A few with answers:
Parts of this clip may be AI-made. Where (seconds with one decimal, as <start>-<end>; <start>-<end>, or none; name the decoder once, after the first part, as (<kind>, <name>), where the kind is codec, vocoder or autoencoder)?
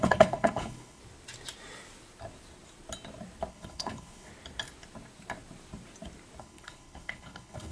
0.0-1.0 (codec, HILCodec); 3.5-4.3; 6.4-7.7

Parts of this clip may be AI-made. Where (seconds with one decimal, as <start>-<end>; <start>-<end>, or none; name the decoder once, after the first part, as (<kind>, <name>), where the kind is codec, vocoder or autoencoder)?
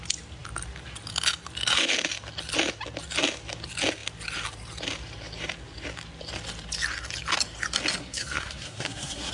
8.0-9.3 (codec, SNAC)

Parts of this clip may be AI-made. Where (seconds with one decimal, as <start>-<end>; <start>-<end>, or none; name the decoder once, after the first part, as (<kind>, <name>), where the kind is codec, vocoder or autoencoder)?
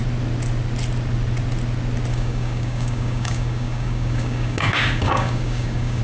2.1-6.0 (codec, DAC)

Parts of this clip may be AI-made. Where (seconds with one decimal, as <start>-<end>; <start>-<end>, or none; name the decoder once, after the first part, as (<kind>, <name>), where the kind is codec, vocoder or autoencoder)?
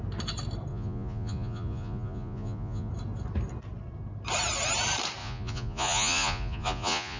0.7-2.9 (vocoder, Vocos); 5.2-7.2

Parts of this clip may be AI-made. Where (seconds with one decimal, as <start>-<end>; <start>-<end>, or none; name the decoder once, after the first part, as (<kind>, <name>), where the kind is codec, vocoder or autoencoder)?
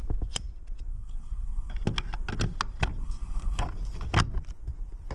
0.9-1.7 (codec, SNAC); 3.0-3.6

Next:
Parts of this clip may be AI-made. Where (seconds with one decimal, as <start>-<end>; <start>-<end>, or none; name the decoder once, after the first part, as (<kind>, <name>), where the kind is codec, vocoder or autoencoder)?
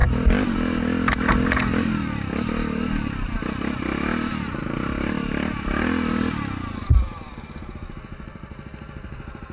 none